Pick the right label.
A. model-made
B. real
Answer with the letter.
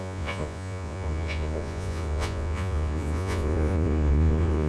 A